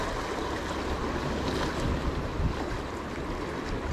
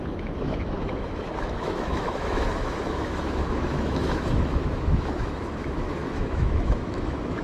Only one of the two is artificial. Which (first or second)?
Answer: second